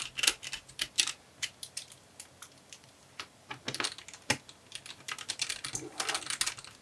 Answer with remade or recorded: recorded